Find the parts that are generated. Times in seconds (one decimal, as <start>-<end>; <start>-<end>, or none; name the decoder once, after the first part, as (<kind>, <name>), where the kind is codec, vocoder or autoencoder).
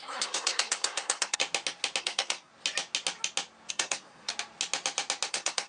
0.0-1.4 (codec, SNAC); 2.0-2.5; 3.7-4.3; 5.3-5.7